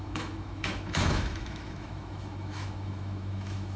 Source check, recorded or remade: remade